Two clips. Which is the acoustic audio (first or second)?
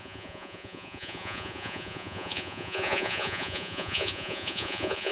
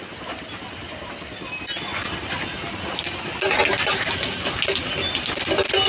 second